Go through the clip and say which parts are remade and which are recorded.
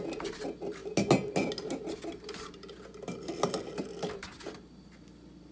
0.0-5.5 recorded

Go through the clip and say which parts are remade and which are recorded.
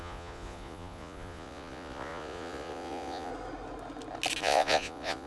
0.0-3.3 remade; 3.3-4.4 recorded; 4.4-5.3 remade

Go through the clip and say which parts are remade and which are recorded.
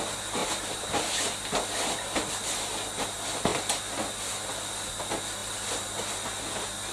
0.0-0.4 recorded; 0.4-1.0 remade; 1.0-6.9 recorded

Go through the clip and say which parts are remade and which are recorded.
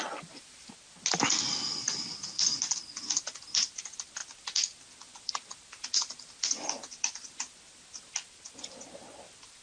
0.0-9.6 recorded